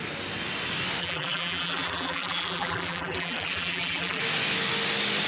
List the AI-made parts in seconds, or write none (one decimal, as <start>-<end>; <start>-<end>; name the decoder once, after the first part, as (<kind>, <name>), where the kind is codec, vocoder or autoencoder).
1.0-4.2 (vocoder, BigVGAN v2)